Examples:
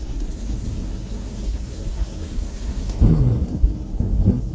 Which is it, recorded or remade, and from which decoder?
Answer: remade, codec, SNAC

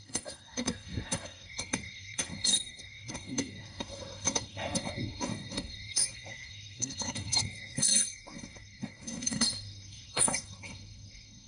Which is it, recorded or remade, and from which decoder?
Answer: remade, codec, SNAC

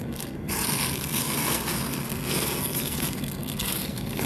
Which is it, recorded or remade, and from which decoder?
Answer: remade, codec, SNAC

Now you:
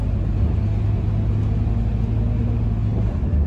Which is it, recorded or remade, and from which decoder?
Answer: recorded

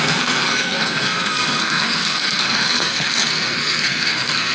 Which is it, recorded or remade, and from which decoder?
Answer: remade, codec, SNAC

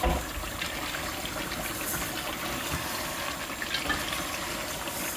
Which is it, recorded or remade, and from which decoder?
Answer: recorded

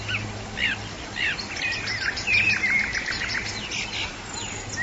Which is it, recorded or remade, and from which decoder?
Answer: recorded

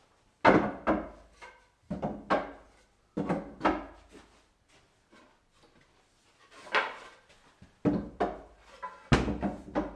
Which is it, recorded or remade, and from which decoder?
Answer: recorded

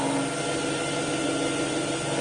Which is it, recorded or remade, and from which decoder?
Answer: recorded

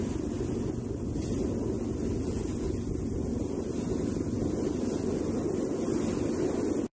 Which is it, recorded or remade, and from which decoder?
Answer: recorded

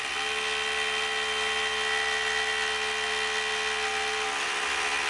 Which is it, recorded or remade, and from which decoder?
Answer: recorded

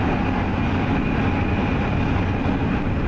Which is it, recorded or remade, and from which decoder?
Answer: recorded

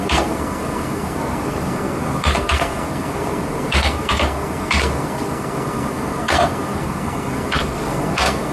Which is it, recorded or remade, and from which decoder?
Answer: remade, codec, SNAC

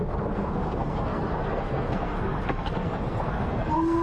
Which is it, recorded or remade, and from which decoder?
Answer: remade, codec, SNAC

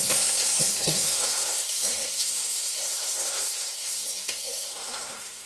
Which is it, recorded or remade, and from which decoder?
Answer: remade, codec, SNAC